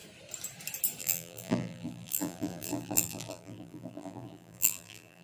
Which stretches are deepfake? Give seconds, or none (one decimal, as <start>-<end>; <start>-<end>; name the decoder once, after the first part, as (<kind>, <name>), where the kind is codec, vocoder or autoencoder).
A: 1.0-5.2 (vocoder, BigVGAN v2)